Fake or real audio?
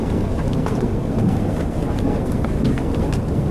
fake